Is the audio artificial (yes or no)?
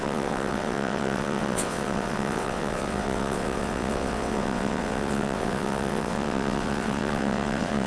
yes